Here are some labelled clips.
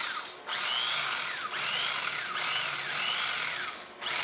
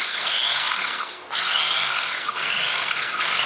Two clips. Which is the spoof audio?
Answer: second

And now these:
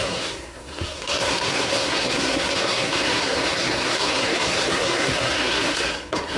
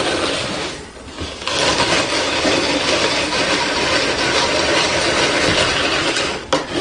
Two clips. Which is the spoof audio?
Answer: first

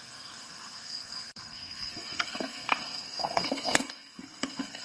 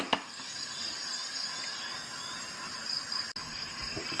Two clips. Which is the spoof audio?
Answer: first